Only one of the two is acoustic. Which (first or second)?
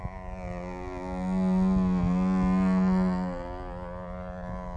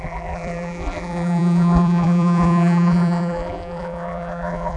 first